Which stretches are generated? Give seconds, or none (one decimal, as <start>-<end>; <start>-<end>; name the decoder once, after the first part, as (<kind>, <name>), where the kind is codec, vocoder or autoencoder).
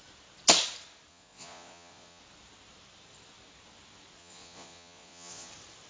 1.1-2.2 (vocoder, Vocos); 4.2-5.5